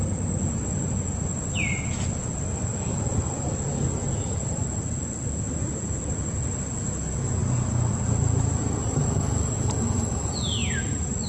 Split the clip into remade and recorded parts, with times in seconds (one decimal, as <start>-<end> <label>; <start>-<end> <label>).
0.0-11.3 recorded